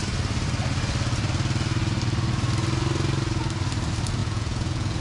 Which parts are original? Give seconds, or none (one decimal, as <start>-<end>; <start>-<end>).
0.0-4.2